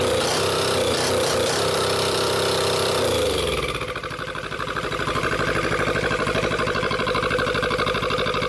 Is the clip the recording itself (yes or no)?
no